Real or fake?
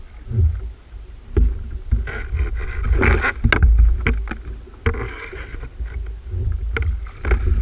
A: real